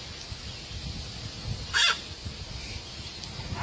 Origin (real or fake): real